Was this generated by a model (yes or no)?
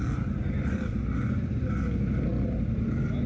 no